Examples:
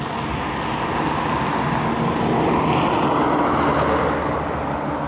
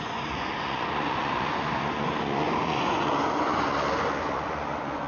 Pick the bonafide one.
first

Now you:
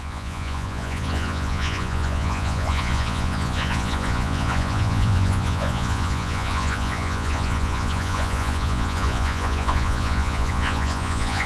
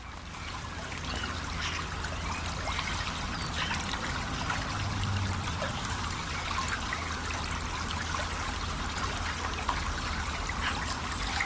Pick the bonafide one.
second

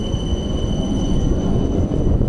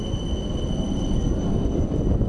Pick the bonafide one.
second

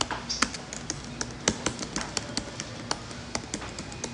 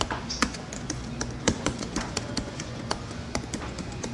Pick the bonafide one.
first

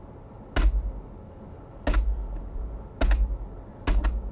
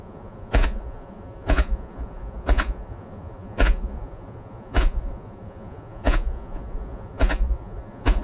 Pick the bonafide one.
first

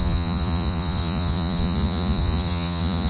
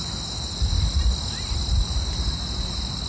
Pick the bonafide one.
second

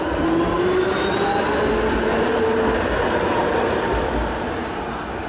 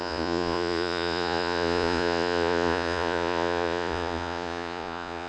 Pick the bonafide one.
first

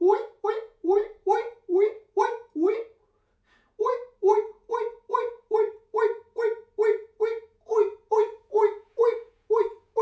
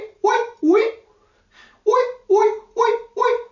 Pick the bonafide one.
second